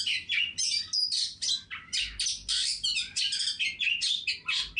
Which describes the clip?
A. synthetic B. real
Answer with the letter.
B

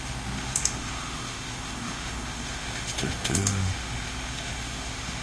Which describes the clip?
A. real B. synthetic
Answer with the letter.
B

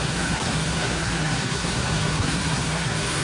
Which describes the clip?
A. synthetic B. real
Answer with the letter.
A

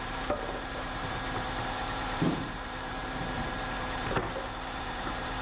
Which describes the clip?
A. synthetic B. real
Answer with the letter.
A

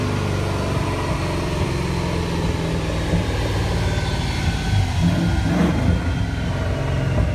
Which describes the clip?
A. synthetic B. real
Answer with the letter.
B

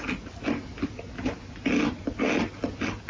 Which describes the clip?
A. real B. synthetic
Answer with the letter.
A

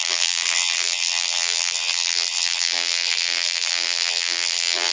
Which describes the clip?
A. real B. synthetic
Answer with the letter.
B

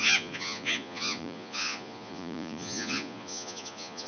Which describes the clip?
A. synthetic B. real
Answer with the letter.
A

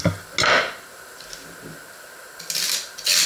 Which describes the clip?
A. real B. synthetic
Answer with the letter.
A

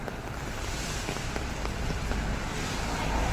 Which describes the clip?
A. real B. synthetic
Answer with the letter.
A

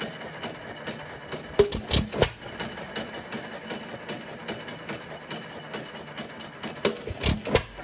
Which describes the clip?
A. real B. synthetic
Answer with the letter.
A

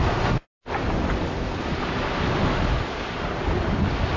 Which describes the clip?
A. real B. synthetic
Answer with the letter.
A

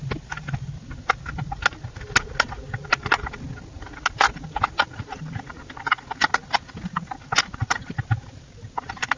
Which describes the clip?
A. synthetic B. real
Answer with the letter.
B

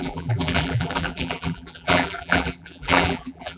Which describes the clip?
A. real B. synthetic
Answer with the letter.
B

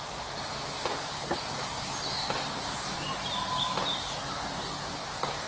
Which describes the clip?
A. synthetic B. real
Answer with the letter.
B